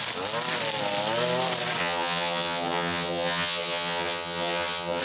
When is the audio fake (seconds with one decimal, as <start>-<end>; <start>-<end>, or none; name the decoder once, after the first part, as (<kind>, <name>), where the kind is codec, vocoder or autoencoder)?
1.8-5.0 (vocoder, HiFi-GAN)